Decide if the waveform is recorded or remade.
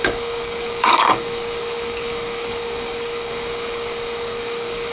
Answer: remade